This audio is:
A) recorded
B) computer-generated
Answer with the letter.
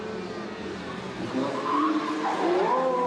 A